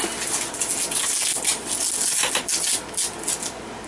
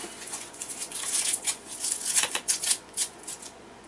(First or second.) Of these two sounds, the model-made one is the second